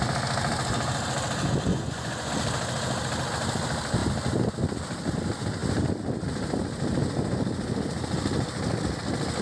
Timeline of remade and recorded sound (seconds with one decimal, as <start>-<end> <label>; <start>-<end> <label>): 0.0-1.7 recorded; 1.7-2.3 remade; 2.3-9.4 recorded